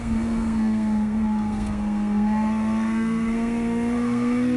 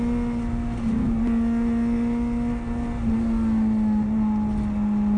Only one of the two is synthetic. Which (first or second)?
first